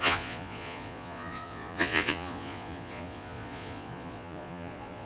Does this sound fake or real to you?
fake